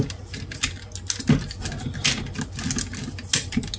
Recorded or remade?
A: recorded